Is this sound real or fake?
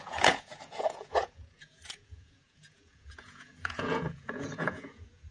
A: fake